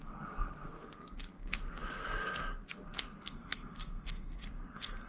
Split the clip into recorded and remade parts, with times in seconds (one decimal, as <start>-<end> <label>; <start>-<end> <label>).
0.0-5.1 remade